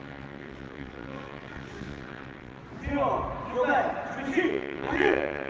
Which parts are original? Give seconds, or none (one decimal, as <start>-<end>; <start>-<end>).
2.6-4.5